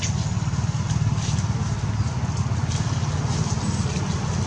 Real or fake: real